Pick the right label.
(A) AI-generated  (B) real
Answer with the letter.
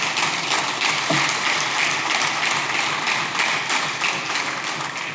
B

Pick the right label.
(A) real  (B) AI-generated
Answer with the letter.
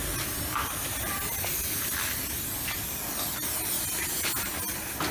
A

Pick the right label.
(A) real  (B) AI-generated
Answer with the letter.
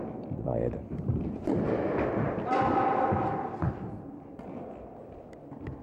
A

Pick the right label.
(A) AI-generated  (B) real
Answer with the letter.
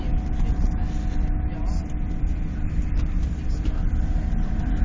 B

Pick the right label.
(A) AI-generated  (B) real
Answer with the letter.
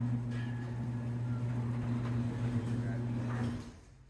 B